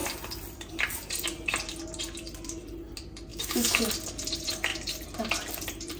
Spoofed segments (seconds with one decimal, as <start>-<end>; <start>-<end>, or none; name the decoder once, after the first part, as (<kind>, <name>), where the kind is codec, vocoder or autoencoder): 3.3-3.9 (autoencoder, DAC-VAE)